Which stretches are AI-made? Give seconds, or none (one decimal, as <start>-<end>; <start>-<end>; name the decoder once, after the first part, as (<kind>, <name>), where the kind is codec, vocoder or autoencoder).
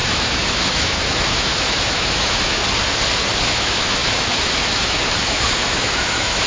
0.0-2.6 (autoencoder, DAC-VAE); 3.4-6.5